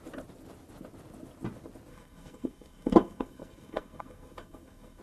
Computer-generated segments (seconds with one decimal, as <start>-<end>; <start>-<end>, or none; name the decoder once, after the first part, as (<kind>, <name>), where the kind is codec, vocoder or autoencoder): 1.9-5.0 (codec, SNAC)